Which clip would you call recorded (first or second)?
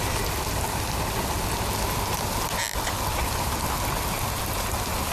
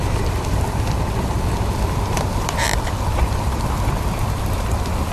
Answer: first